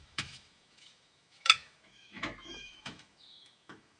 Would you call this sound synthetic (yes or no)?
yes